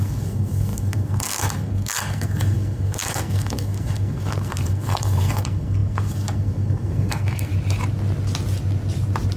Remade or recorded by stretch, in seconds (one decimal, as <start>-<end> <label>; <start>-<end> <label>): 0.0-7.5 remade; 7.5-9.4 recorded